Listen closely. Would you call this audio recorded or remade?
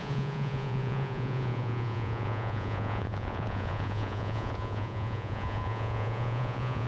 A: remade